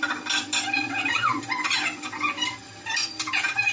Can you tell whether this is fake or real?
real